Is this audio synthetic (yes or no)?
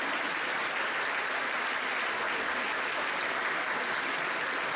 no